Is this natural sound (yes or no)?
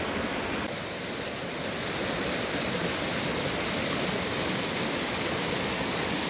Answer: yes